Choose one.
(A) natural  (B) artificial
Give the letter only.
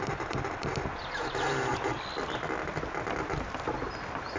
A